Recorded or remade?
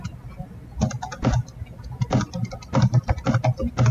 recorded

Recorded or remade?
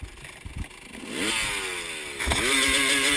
recorded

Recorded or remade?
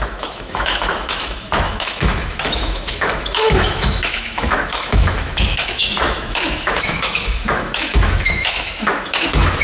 remade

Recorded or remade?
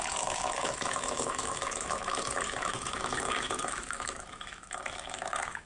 remade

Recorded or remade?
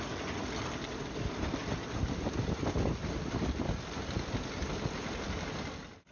recorded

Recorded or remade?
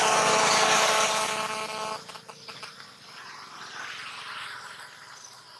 recorded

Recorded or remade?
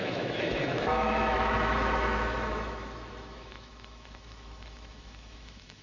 remade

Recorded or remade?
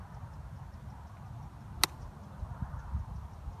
recorded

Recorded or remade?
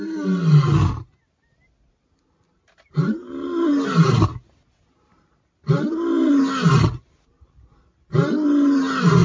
recorded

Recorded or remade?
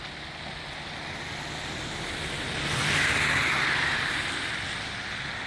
recorded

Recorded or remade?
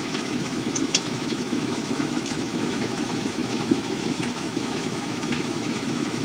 remade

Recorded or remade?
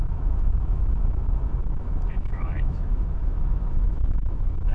remade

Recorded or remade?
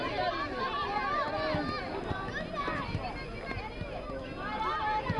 recorded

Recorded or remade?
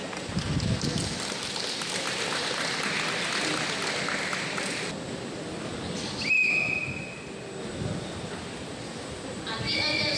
recorded